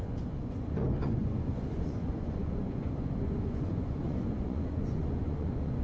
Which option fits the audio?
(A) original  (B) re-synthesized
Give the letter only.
B